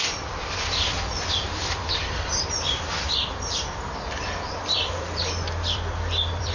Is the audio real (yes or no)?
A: no